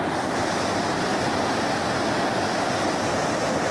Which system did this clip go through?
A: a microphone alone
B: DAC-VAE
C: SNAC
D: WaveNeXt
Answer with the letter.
A